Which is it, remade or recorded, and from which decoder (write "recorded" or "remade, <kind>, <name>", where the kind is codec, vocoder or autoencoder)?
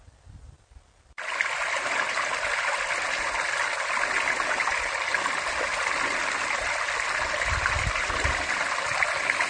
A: recorded